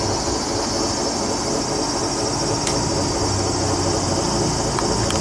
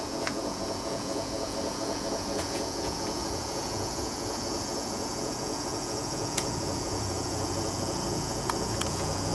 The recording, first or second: first